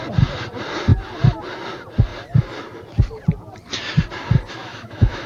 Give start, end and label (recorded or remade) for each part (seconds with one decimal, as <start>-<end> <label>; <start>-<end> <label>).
0.0-4.6 recorded; 4.6-5.3 remade